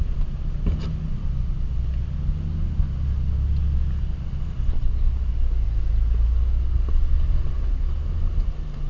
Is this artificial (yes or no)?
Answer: no